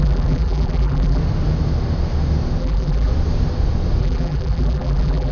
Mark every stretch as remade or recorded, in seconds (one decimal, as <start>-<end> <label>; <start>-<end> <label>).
0.0-1.2 remade; 1.2-2.6 recorded; 2.6-3.1 remade; 3.1-4.0 recorded; 4.0-5.3 remade